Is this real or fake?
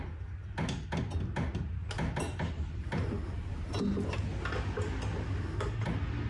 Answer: real